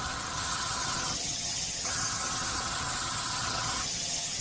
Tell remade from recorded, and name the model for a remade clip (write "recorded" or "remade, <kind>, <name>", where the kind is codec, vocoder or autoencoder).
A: remade, vocoder, HiFi-GAN